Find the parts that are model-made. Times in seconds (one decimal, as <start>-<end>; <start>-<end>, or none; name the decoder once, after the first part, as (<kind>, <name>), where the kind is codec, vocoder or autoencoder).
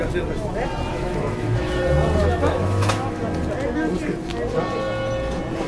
0.9-1.8 (autoencoder, DAC-VAE); 2.2-3.2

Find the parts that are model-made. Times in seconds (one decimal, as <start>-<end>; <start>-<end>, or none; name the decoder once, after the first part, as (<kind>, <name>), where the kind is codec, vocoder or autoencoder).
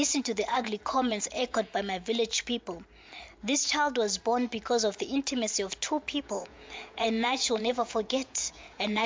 0.0-1.7 (vocoder, Vocos); 6.2-9.1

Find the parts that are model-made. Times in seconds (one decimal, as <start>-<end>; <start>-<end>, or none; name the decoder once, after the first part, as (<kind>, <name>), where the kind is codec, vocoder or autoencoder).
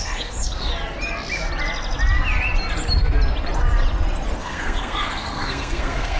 0.0-0.7 (codec, SNAC); 4.4-6.2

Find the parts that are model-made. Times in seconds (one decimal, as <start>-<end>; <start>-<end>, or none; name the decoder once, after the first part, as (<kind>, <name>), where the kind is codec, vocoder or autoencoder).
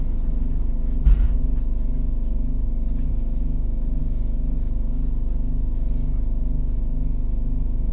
none